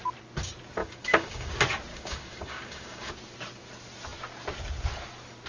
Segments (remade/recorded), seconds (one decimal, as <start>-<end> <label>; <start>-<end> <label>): 0.0-0.8 recorded; 0.8-1.5 remade; 1.5-1.9 recorded; 1.9-3.1 remade; 3.1-5.5 recorded